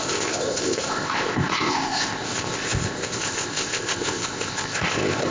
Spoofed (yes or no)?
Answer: yes